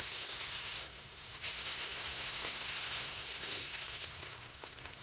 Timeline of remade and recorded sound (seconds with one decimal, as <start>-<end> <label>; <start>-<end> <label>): 0.0-5.0 remade